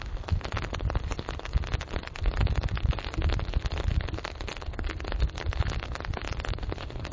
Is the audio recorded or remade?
recorded